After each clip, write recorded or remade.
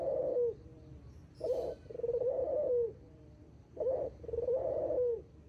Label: remade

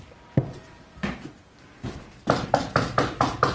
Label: remade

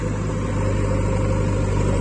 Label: recorded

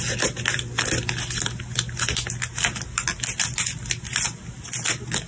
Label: recorded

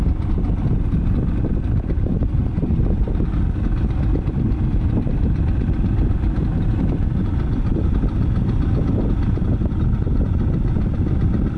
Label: remade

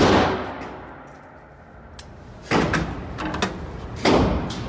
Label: recorded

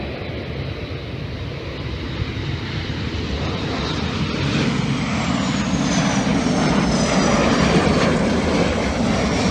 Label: recorded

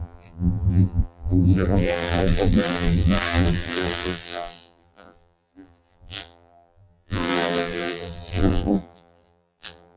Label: remade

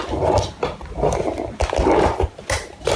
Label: recorded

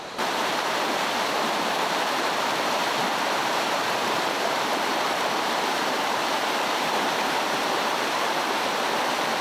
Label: remade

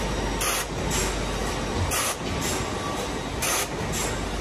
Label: recorded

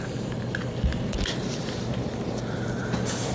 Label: recorded